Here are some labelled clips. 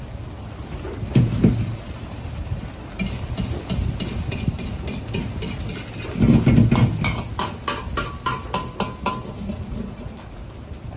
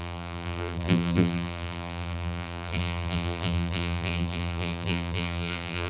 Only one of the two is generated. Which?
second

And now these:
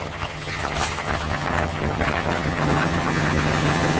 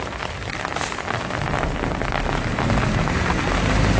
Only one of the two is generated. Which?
first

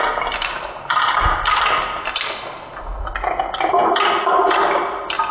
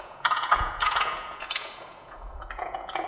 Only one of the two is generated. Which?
second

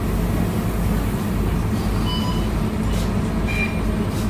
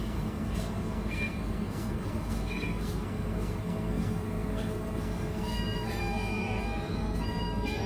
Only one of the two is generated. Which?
second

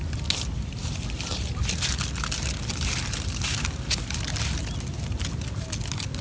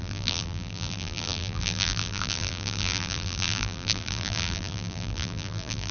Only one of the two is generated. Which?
second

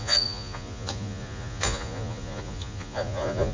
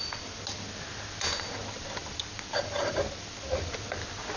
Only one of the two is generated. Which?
first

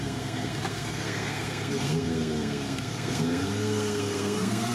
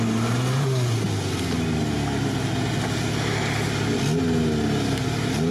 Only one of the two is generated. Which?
first